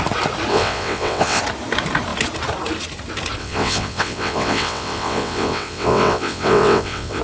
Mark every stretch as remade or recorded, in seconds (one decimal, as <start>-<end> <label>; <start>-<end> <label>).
0.0-0.5 recorded; 0.5-1.4 remade; 1.4-3.4 recorded; 3.4-7.2 remade